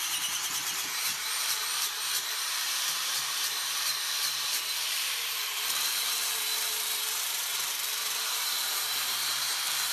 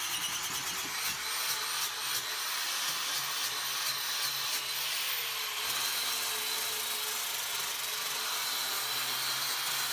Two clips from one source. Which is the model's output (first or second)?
first